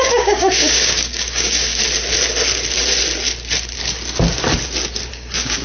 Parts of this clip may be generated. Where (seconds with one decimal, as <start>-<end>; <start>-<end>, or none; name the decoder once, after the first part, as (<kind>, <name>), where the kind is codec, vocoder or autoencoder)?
0.0-1.8 (codec, DAC); 5.1-5.6